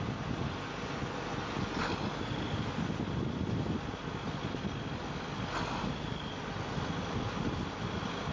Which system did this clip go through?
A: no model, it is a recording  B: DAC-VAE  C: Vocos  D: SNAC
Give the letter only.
A